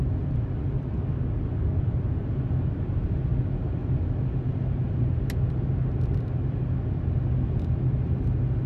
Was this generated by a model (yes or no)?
no